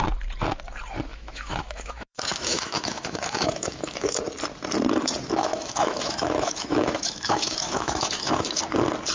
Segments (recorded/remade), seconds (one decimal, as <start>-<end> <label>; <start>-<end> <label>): 0.0-1.1 recorded; 1.1-4.2 remade; 4.2-5.3 recorded; 5.3-8.6 remade; 8.6-9.1 recorded